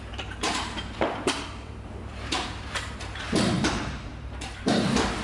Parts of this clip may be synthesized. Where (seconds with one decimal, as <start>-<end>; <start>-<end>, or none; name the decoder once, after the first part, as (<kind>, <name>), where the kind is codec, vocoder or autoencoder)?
0.0-5.2 (vocoder, BigVGAN v2)